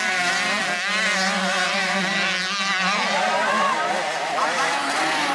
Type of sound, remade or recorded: recorded